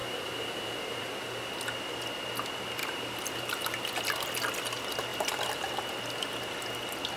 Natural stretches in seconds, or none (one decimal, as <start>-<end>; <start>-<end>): 1.1-2.8; 3.8-5.1; 5.8-7.2